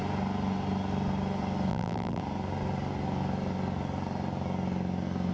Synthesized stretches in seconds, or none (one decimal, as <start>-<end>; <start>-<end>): 1.7-2.2